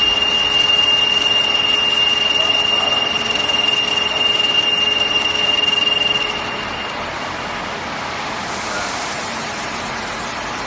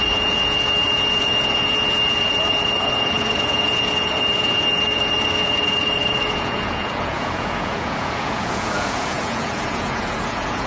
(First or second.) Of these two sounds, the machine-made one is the second